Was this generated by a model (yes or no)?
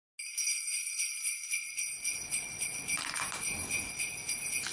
no